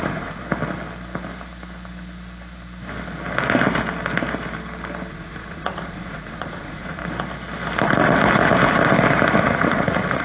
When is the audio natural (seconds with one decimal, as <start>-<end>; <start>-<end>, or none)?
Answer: 0.4-5.1; 7.0-9.4